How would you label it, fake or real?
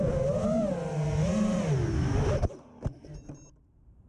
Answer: real